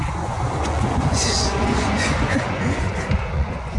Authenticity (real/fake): fake